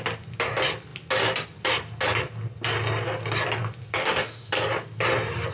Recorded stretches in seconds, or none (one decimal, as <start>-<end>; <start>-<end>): 0.0-4.0; 4.5-5.5